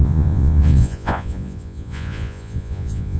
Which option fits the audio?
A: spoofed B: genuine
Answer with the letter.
A